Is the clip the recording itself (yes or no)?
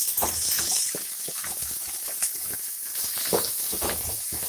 no